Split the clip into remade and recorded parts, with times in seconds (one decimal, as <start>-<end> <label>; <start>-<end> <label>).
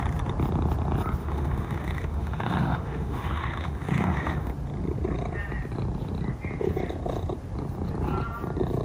0.0-1.2 recorded; 1.2-4.5 remade; 4.5-8.8 recorded